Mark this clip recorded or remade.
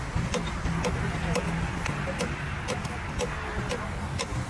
recorded